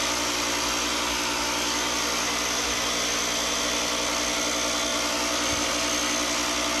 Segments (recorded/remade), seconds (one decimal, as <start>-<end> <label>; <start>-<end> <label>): 0.0-4.9 recorded; 4.9-5.7 remade; 5.7-6.8 recorded